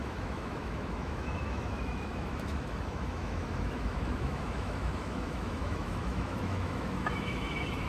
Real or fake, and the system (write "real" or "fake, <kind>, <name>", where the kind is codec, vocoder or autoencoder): fake, autoencoder, DAC-VAE